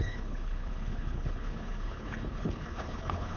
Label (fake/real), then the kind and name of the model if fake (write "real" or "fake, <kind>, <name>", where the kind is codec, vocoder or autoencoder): fake, codec, HILCodec